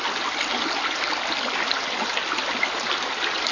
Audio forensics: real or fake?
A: real